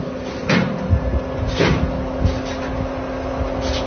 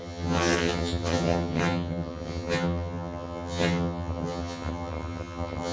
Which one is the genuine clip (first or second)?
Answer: first